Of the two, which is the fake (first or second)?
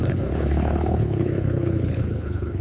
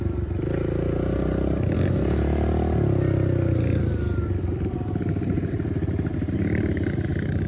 first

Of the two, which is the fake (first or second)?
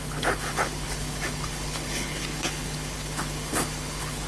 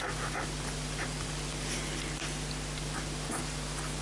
first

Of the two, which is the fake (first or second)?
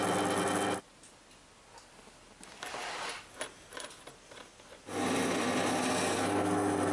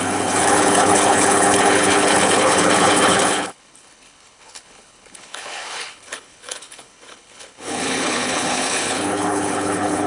second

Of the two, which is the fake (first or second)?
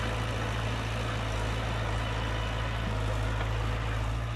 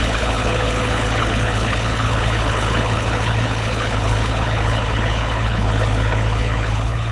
second